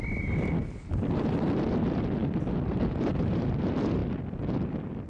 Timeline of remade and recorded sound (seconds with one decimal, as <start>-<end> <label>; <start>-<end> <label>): 0.0-5.1 recorded